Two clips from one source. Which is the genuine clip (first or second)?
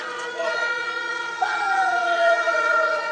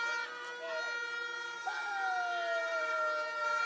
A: second